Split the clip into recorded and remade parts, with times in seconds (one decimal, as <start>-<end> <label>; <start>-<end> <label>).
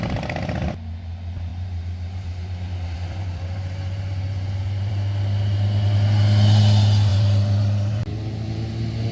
0.0-1.5 recorded; 1.5-4.9 remade; 4.9-7.1 recorded; 7.1-8.0 remade; 8.0-9.1 recorded